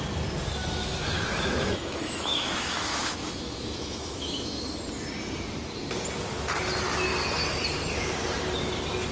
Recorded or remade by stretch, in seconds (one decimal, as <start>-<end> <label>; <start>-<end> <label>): 0.0-0.6 recorded; 0.6-4.8 remade; 4.8-9.1 recorded